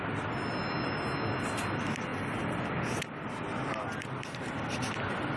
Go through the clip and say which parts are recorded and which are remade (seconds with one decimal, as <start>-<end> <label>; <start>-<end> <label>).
0.0-3.7 recorded; 3.7-4.4 remade; 4.4-5.4 recorded